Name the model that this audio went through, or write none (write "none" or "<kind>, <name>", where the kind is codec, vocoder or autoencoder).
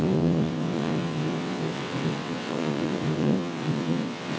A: vocoder, WaveNeXt